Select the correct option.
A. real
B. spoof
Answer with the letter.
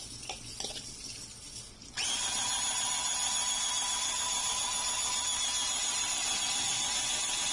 A